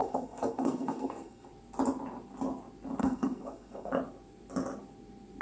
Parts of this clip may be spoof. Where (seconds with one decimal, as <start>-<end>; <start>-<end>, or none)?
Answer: 0.0-1.5; 3.0-3.9